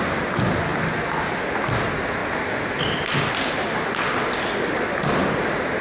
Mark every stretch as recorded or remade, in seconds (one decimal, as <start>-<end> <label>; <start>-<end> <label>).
0.0-5.8 recorded

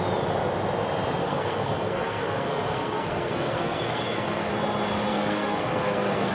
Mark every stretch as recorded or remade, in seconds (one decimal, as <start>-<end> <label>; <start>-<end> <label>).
0.0-1.2 recorded; 1.2-4.5 remade; 4.5-5.1 recorded; 5.1-6.3 remade